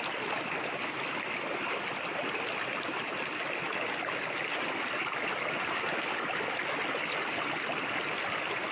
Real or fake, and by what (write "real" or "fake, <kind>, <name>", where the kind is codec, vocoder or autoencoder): real